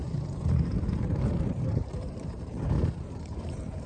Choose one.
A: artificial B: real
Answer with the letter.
A